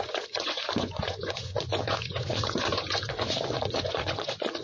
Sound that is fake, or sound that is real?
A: fake